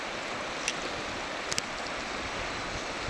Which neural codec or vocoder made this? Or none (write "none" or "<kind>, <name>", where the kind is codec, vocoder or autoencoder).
none